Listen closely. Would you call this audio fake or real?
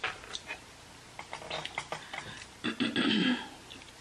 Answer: real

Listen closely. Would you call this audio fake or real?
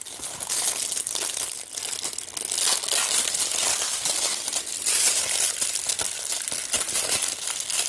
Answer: real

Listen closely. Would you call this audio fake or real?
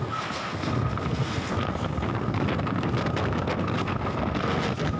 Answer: fake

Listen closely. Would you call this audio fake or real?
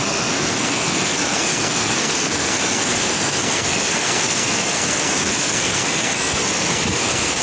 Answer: fake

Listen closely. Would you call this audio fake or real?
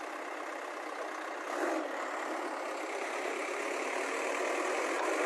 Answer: real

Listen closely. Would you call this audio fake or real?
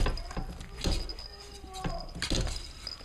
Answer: real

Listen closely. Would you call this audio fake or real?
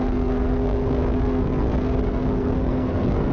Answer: fake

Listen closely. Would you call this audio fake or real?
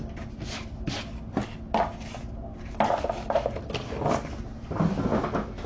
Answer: real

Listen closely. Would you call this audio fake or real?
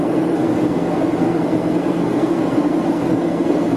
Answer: fake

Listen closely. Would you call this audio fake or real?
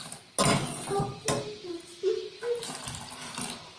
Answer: real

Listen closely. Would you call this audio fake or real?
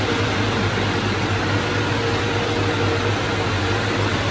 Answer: real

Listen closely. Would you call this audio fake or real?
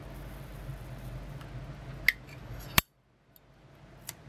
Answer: real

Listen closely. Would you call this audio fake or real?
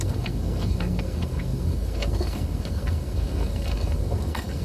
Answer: fake